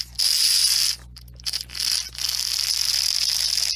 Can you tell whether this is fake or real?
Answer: real